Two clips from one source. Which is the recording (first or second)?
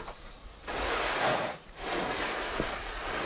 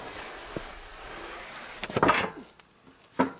second